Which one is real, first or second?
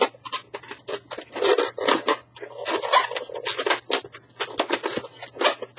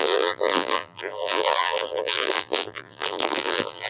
first